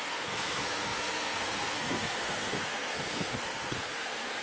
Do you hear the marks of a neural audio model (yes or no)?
yes